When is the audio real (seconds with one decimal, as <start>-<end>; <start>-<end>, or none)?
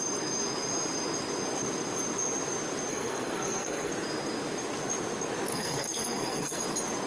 0.0-2.9; 3.9-5.5; 6.6-7.1